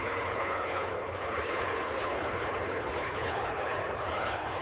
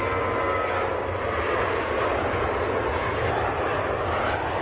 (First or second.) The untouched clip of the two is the second